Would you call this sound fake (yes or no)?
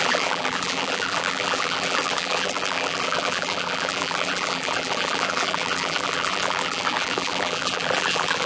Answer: yes